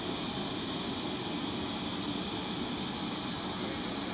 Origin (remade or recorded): recorded